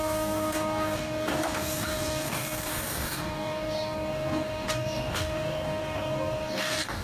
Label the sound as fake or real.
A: fake